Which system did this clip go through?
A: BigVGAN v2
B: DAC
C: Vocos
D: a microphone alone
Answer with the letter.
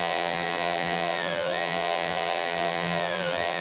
A